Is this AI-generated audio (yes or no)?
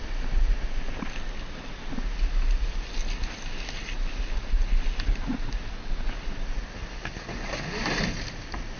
no